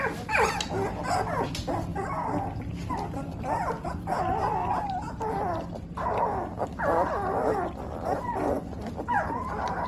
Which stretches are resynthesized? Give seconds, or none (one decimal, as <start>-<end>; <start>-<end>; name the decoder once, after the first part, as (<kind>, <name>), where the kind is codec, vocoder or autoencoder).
4.6-6.2 (vocoder, BigVGAN v2)